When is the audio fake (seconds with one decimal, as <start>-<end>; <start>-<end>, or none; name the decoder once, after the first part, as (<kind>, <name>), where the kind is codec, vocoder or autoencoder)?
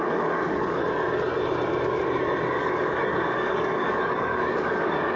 0.0-0.8 (codec, DAC); 2.5-5.2